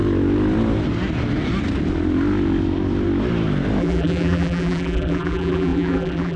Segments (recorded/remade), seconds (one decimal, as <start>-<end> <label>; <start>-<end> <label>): 0.0-3.8 recorded; 3.8-6.4 remade